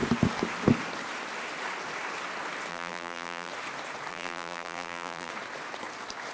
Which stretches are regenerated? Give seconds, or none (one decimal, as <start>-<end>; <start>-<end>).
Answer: 2.7-3.5; 4.1-5.3